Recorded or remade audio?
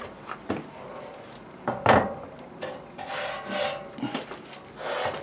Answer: recorded